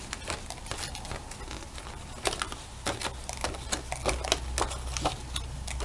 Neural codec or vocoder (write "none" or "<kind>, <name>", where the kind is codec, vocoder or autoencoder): none